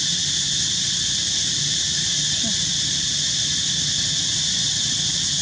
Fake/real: real